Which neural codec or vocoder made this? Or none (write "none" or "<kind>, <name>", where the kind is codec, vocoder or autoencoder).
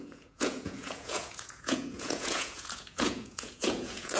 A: vocoder, Vocos